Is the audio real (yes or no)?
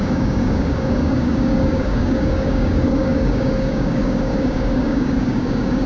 no